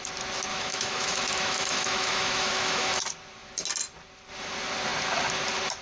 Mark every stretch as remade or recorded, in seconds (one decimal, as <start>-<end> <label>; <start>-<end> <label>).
0.0-0.5 recorded; 0.5-3.0 remade; 3.0-5.8 recorded